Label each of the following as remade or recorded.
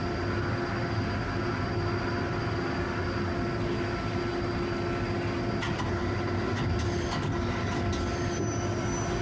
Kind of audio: recorded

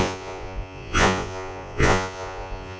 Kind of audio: remade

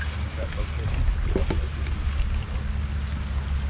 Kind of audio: recorded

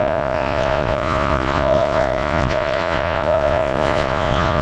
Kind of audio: remade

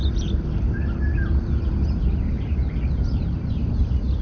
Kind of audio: recorded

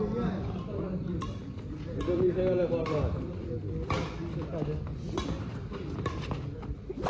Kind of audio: recorded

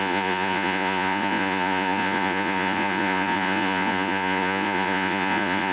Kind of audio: remade